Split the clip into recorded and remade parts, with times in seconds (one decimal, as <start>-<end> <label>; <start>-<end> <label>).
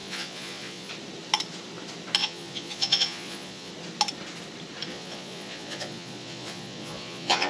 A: 0.0-0.9 remade; 0.9-2.2 recorded; 2.2-3.7 remade; 3.7-4.9 recorded; 4.9-7.5 remade